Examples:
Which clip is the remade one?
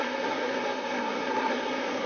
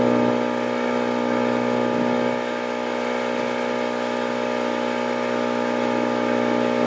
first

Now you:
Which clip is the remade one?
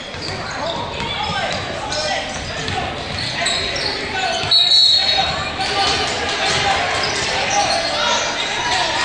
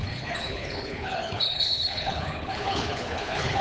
second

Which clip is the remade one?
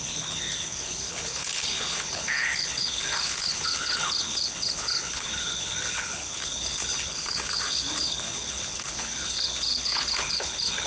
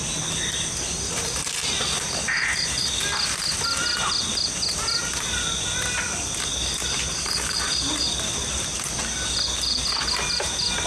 first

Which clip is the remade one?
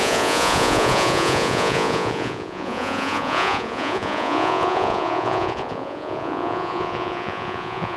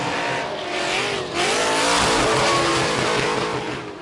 first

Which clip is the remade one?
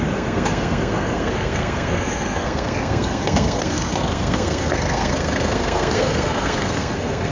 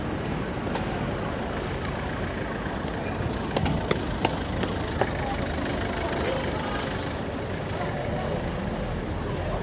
first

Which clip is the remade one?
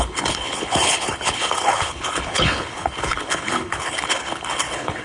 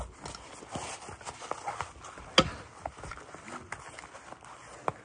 first